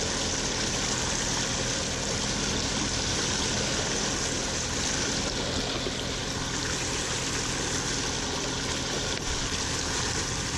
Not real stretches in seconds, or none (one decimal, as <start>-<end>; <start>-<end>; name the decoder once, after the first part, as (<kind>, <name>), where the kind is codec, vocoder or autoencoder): none